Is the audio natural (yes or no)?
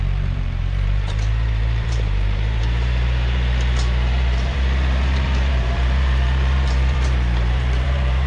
no